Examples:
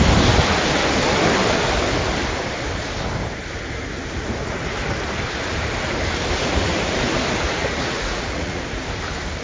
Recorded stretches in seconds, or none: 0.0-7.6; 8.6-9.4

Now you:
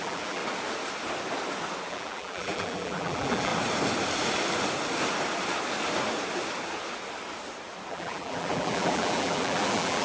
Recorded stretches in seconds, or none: 0.4-1.9; 3.5-7.9

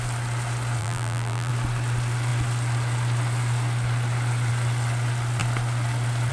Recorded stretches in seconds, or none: 0.0-0.8; 1.5-6.3

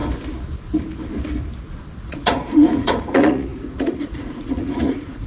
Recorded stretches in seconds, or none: 0.0-2.0